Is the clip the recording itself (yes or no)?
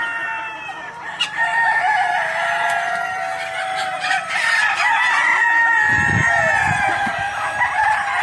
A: yes